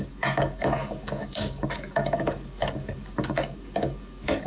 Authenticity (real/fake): fake